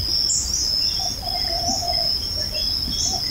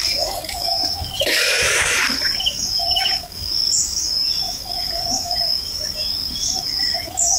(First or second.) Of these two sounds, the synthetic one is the second